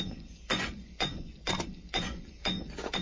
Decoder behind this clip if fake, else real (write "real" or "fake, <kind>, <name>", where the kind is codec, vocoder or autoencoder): fake, vocoder, Vocos